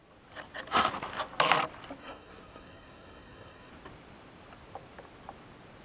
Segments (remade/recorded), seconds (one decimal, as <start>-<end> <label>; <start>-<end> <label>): 0.0-2.0 recorded; 2.0-3.7 remade; 3.7-5.8 recorded